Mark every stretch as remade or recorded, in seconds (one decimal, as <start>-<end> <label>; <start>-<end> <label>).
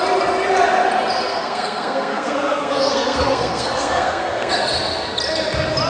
0.0-1.3 recorded; 1.3-4.5 remade; 4.5-5.9 recorded